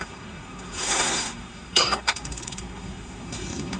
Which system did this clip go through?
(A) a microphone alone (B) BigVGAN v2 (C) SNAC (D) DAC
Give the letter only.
C